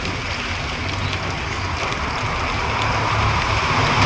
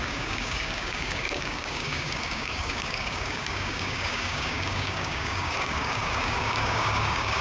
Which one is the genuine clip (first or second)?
first